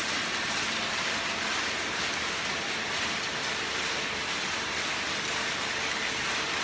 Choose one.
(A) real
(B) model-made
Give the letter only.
A